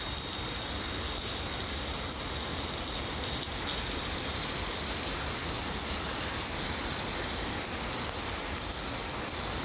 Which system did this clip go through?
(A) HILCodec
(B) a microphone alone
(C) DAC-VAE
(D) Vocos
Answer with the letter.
B